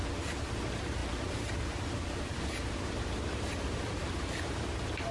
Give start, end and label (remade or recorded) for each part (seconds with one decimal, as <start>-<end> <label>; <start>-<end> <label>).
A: 0.0-5.1 recorded